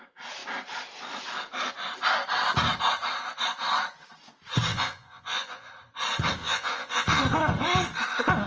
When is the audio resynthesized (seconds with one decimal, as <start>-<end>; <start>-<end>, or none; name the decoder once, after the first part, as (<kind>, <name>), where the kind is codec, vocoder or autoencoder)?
4.7-5.7 (vocoder, Vocos); 6.4-7.2